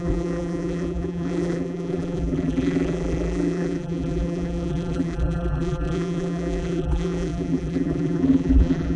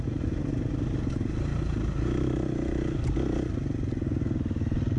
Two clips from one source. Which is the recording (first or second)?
second